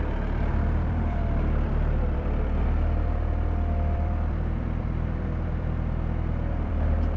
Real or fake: fake